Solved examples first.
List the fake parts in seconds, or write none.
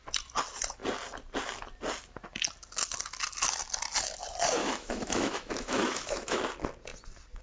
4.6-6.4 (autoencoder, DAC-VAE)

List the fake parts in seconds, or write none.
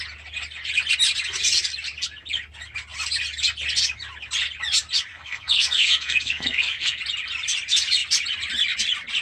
5.1-7.0 (codec, SNAC)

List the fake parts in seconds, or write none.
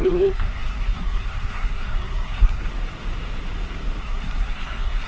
0.0-2.6 (codec, SNAC); 4.0-5.1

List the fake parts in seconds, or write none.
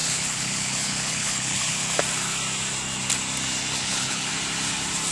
0.0-1.8 (codec, HILCodec); 3.8-4.3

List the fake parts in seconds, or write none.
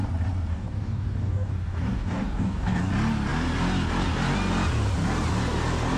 0.5-2.9 (codec, DAC)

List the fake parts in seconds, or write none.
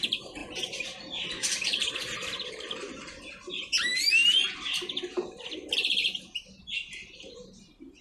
0.4-2.5 (vocoder, BigVGAN v2)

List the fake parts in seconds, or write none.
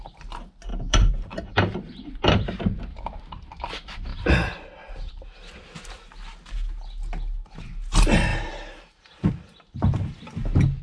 0.7-3.5 (vocoder, BigVGAN v2); 4.1-5.1; 8.3-9.3